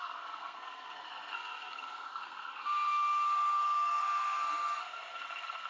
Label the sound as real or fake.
fake